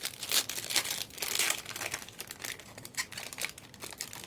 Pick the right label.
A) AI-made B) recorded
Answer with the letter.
B